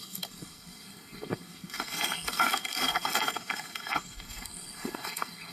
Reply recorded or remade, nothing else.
remade